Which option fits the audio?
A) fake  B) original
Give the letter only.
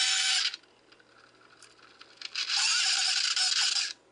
B